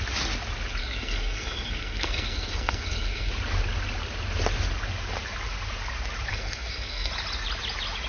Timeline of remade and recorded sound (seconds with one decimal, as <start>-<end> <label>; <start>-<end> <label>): 0.0-0.8 recorded; 0.8-3.3 remade; 3.3-6.3 recorded; 6.3-7.1 remade; 7.1-8.1 recorded